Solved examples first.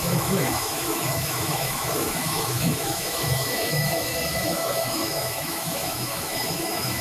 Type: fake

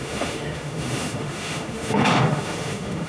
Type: fake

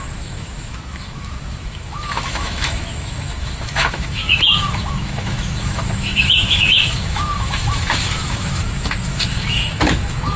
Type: fake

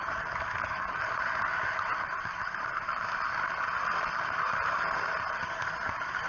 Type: real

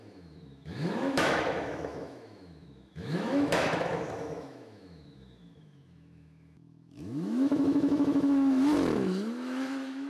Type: fake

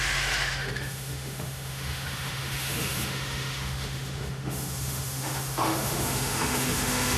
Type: fake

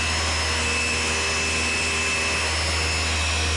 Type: real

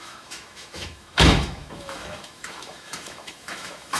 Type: fake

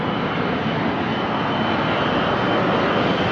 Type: real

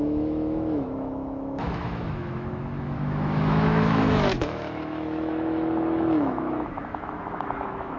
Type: fake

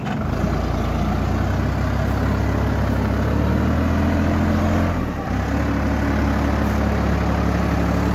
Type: real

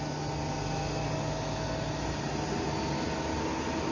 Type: real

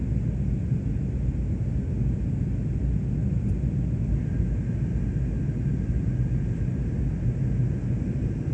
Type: real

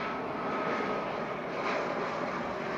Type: real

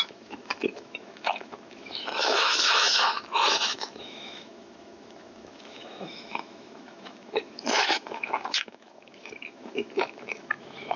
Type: fake